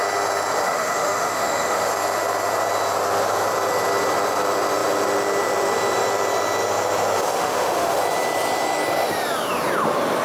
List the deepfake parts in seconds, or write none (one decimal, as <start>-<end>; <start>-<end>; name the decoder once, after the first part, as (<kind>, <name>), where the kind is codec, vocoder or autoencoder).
0.5-1.9 (autoencoder, DAC-VAE); 7.2-8.0